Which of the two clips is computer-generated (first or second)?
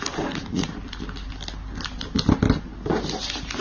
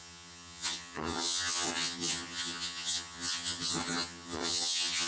second